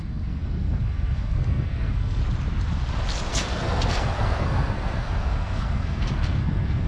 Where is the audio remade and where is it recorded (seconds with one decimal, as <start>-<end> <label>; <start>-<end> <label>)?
0.0-2.2 remade; 2.2-3.3 recorded; 3.3-6.9 remade

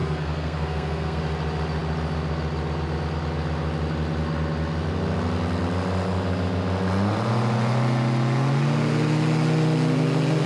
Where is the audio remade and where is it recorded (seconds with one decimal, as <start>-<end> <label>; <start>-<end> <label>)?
0.0-1.2 remade; 1.2-10.5 recorded

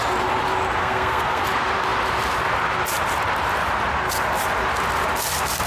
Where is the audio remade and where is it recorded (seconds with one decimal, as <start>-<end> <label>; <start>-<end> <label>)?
0.0-0.8 recorded; 0.8-1.4 remade; 1.4-5.7 recorded